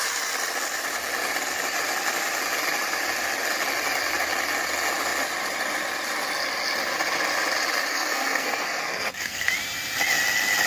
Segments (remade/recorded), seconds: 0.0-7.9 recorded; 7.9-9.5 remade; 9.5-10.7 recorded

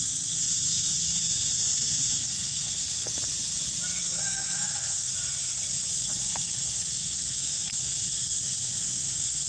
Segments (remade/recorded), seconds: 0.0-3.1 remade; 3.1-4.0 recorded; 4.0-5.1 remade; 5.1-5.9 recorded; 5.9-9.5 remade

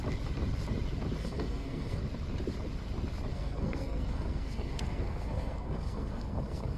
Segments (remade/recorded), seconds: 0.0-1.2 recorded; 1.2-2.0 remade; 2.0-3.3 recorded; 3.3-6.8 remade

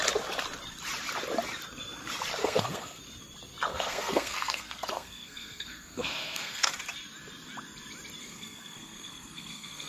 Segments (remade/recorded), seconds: 0.0-2.4 recorded; 2.4-3.0 remade; 3.0-3.7 recorded; 3.7-6.7 remade; 6.7-8.2 recorded; 8.2-9.9 remade